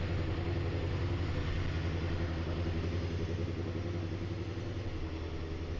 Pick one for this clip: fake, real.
real